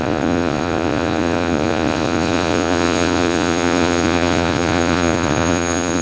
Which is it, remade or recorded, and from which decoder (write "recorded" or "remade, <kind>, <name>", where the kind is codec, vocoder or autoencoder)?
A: remade, vocoder, Vocos